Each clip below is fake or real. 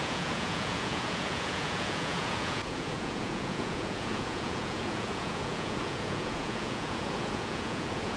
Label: fake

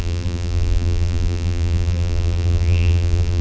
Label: fake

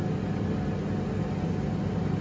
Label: real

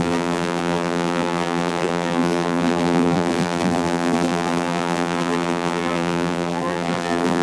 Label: fake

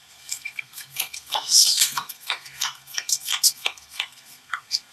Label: fake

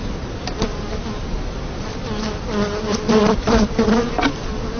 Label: real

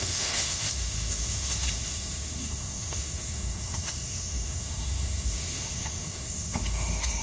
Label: fake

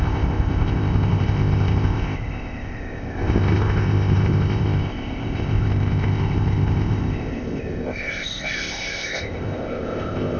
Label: fake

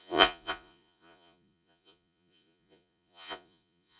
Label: fake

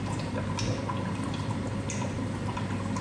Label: real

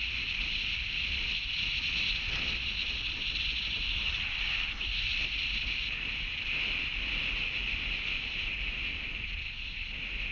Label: real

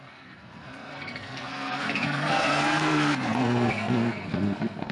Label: fake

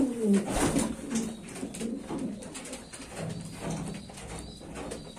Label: real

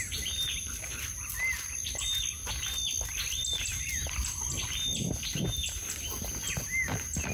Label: real